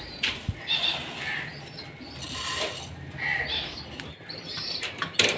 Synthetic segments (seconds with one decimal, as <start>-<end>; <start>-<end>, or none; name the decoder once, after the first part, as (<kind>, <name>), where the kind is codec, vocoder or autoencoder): none